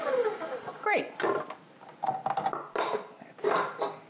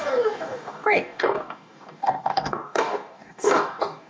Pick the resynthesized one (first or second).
second